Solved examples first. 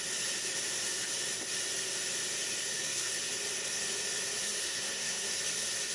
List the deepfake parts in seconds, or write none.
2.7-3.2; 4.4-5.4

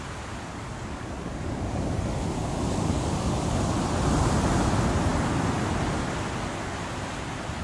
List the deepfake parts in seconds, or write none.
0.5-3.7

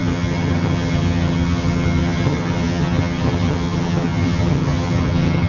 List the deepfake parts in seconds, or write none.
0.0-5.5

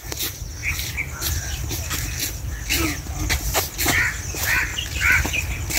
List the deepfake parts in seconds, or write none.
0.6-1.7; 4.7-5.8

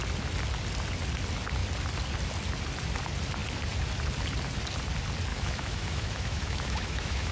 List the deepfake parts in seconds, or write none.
5.3-7.3

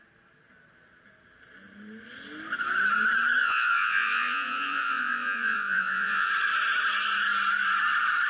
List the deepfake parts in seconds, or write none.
3.4-6.3